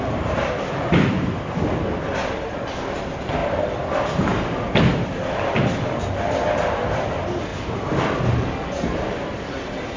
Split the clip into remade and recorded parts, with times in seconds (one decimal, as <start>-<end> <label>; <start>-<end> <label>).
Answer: 0.0-10.0 recorded